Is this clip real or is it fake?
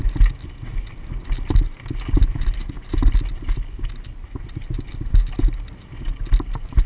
real